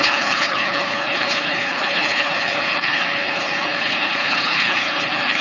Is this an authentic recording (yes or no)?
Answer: no